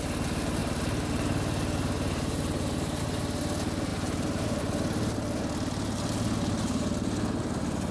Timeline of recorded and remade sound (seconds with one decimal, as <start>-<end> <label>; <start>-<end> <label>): 0.0-0.6 recorded; 0.6-3.0 remade; 3.0-3.9 recorded; 3.9-4.6 remade; 4.6-7.9 recorded